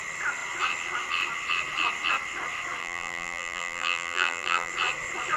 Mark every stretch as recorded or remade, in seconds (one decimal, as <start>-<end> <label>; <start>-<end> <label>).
0.0-2.8 recorded; 2.8-4.7 remade; 4.7-5.4 recorded